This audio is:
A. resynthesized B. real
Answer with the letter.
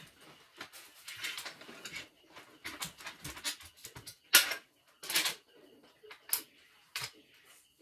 B